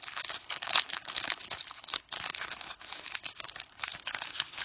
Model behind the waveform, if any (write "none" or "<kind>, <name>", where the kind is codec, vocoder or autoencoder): codec, HILCodec